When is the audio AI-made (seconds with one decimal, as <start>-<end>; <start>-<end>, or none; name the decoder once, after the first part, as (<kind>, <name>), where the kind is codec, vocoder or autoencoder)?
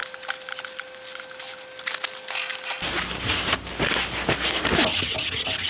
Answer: none